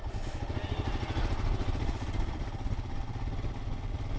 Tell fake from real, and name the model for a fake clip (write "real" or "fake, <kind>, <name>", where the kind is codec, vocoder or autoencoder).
real